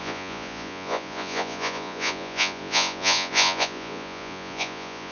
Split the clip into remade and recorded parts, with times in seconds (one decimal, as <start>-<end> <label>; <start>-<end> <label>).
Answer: 0.0-5.1 remade